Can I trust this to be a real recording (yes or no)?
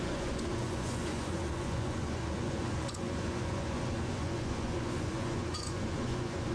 no